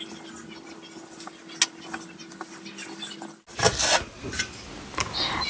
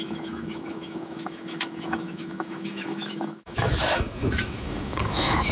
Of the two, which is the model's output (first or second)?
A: second